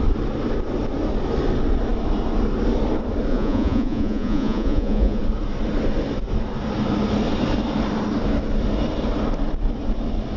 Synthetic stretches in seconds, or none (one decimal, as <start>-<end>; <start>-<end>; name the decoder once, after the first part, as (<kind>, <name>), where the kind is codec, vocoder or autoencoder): 3.3-5.2 (vocoder, Vocos)